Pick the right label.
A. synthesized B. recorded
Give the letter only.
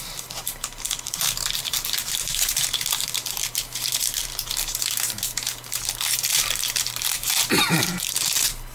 A